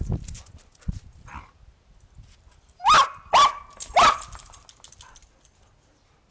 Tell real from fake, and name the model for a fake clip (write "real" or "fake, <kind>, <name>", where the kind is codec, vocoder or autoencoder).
real